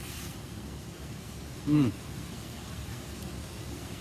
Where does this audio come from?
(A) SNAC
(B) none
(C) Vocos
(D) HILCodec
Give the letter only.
A